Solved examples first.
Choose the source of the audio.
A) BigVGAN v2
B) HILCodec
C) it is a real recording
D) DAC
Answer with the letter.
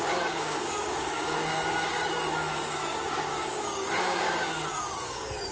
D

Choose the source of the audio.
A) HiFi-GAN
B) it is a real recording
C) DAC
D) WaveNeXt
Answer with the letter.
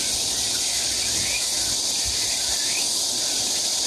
B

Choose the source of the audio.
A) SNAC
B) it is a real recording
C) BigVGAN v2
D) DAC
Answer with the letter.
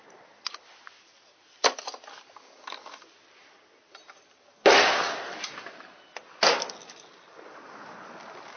B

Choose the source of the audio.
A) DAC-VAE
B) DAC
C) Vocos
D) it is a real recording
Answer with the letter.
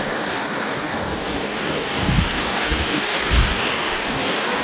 B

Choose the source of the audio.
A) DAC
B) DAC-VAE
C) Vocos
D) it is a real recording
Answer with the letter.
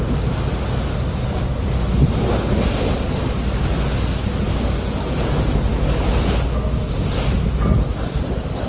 D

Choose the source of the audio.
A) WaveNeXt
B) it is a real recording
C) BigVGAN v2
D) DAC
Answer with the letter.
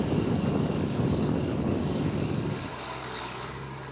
D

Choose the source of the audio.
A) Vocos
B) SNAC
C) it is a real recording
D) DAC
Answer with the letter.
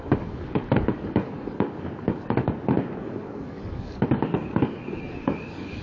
D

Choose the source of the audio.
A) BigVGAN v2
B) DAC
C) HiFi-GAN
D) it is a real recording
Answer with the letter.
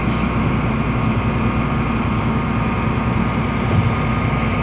D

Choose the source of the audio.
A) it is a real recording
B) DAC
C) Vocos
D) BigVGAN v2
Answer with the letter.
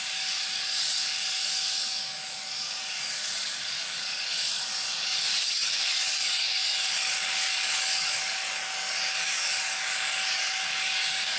B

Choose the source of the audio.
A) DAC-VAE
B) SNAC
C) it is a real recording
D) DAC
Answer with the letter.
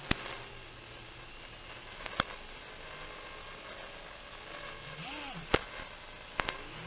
C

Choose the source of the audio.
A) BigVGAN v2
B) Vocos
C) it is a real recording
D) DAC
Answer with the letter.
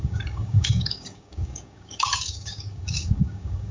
D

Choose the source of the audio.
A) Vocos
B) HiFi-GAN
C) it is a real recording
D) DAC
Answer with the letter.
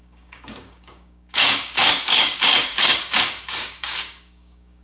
D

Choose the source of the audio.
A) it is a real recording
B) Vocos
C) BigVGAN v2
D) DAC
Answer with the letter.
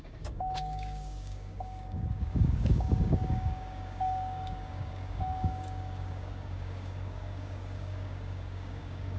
D